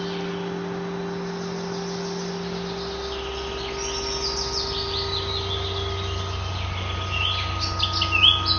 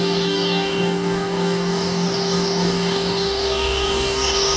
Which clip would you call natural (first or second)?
first